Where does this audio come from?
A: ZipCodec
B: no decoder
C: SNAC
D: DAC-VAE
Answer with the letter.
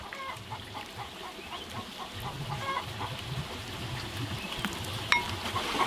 B